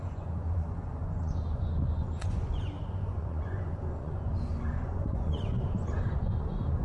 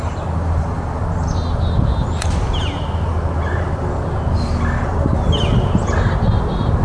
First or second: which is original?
second